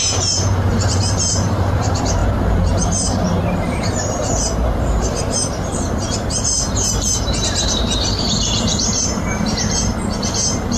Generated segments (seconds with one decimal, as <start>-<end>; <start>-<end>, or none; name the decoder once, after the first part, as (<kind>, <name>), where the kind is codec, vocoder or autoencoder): 0.0-10.8 (vocoder, BigVGAN v2)